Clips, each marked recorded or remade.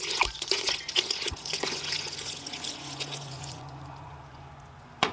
remade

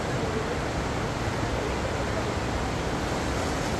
recorded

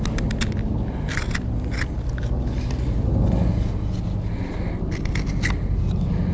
recorded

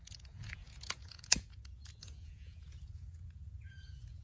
remade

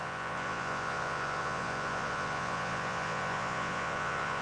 remade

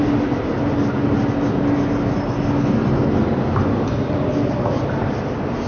recorded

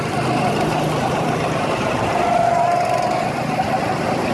recorded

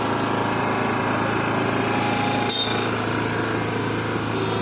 recorded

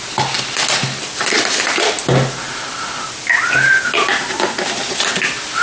recorded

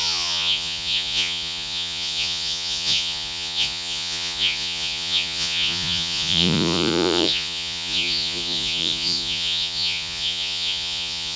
remade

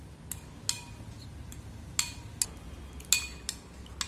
recorded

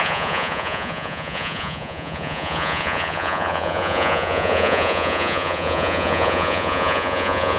remade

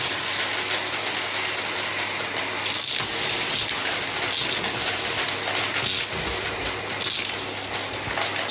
recorded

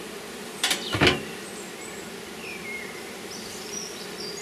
recorded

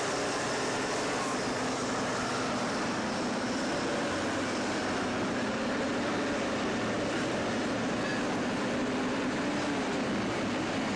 recorded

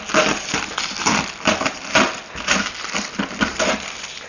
recorded